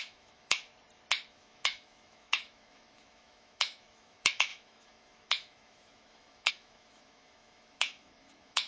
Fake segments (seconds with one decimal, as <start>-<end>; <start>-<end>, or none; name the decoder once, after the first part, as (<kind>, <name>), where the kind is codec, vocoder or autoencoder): 0.0-0.7 (autoencoder, DAC-VAE); 1.3-8.7